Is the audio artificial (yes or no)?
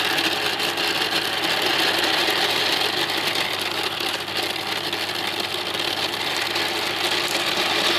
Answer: no